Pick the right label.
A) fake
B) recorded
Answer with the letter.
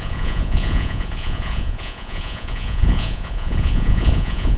A